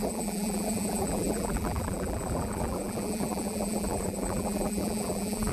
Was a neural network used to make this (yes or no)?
yes